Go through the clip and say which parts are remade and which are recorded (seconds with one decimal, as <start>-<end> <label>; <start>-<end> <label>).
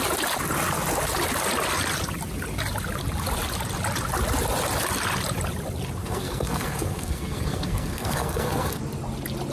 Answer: 0.0-6.0 recorded; 6.0-8.8 remade; 8.8-9.5 recorded